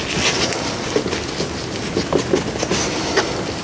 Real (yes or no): yes